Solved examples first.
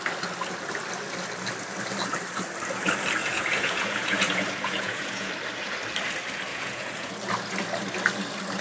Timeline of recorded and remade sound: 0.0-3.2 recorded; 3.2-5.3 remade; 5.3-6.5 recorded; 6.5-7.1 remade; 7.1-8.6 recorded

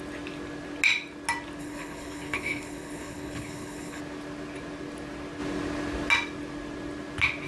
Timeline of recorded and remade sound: 0.0-1.6 recorded; 1.6-4.0 remade; 4.0-7.5 recorded

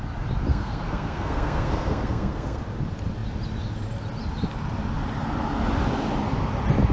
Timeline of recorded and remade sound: 0.0-0.5 recorded; 0.5-2.6 remade; 2.6-6.9 recorded

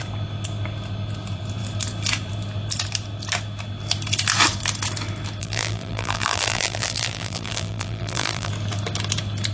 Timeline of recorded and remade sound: 0.0-5.4 recorded; 5.4-8.5 remade; 8.5-9.5 recorded

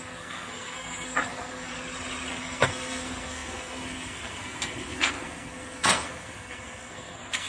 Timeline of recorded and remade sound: 0.0-1.7 remade; 1.7-2.3 recorded; 2.3-7.5 remade

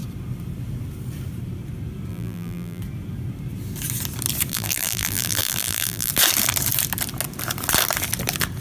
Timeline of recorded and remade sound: 0.0-2.1 recorded; 2.1-2.8 remade; 2.8-4.5 recorded; 4.5-6.1 remade; 6.1-8.6 recorded